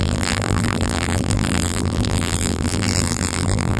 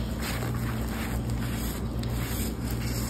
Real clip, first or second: second